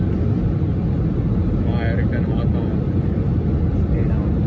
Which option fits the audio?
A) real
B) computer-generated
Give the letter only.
A